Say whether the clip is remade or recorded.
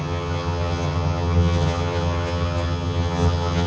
remade